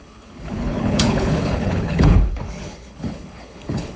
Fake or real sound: fake